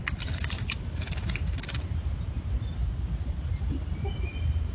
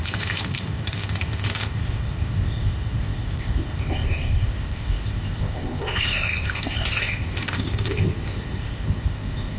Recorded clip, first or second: first